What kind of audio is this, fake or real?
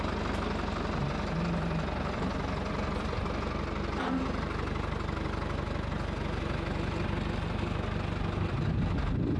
real